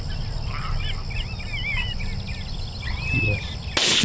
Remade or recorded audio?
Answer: recorded